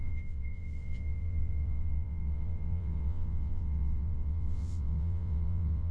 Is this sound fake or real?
fake